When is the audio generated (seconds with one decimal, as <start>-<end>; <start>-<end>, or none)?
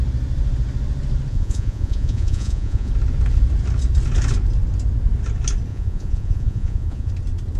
1.3-2.9; 5.7-7.1